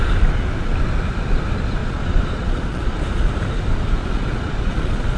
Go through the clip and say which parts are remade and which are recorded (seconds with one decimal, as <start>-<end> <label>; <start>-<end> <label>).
0.0-1.8 recorded; 1.8-3.3 remade; 3.3-4.0 recorded; 4.0-5.2 remade

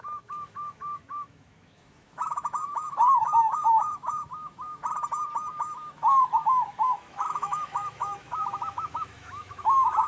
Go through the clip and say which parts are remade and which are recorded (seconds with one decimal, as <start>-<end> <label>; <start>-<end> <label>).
0.0-4.8 remade; 4.8-5.6 recorded; 5.6-10.1 remade

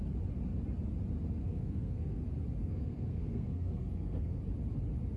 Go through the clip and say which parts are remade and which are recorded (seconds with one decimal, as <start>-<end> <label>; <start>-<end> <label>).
0.0-1.4 recorded; 1.4-2.2 remade; 2.2-2.6 recorded; 2.6-4.4 remade; 4.4-5.2 recorded